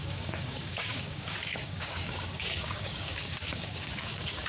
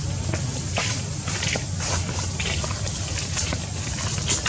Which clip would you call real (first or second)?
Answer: second